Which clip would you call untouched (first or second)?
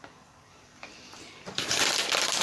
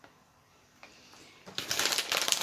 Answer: second